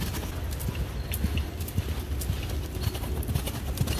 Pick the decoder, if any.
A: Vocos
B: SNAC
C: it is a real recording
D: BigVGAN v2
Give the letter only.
C